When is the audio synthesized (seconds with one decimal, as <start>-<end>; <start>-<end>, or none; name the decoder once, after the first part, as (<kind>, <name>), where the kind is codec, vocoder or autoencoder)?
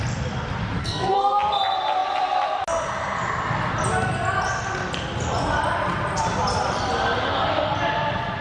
0.8-1.4 (codec, SNAC)